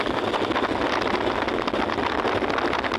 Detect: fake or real real